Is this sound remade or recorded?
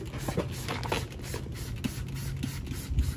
recorded